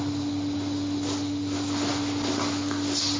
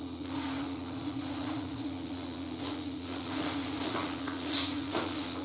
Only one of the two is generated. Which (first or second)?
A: second